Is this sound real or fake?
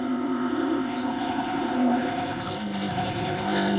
fake